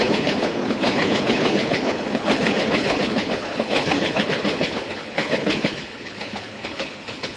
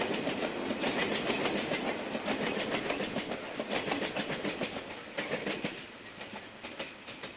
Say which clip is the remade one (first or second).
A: first